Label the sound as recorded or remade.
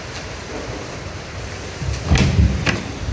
recorded